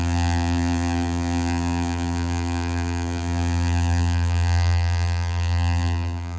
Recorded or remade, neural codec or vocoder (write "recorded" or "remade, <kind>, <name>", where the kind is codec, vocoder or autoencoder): remade, vocoder, BigVGAN v2